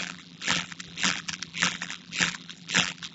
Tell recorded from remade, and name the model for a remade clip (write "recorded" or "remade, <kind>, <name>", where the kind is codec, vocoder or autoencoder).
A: remade, vocoder, BigVGAN v2